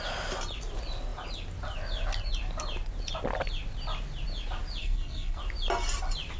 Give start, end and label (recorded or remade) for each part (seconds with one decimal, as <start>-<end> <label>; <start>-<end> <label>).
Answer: 0.0-4.8 recorded; 4.8-5.4 remade; 5.4-6.4 recorded